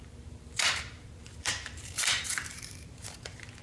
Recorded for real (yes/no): no